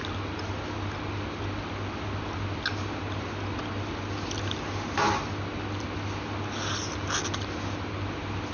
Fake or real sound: real